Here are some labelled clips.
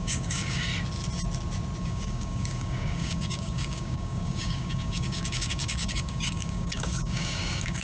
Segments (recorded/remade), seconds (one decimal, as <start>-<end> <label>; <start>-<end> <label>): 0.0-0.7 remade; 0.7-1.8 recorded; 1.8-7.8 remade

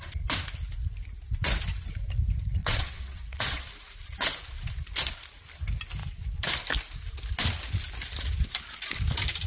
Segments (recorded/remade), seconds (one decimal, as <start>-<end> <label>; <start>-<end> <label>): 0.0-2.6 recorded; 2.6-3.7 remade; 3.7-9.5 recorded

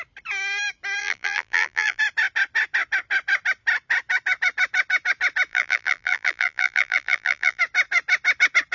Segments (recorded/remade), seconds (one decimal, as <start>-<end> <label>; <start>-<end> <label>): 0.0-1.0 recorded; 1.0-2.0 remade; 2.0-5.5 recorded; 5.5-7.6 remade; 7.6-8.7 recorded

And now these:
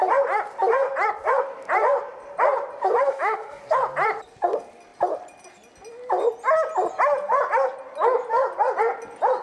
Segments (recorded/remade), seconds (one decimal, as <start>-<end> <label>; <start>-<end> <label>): 0.0-3.0 recorded; 3.0-3.6 remade; 3.6-9.4 recorded

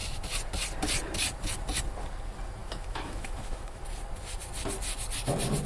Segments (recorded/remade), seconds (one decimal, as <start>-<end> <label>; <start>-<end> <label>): 0.0-2.6 recorded; 2.6-3.8 remade; 3.8-5.7 recorded